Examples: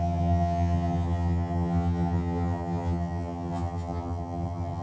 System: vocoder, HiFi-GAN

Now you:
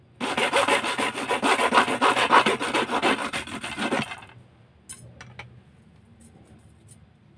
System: none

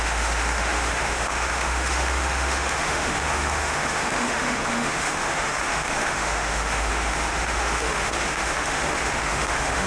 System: autoencoder, DAC-VAE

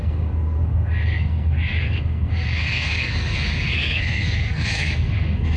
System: codec, SNAC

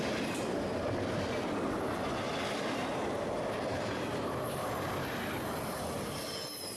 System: none